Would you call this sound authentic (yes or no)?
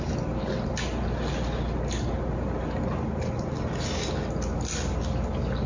yes